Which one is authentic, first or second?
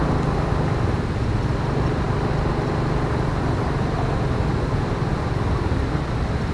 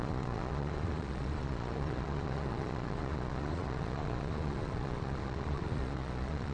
first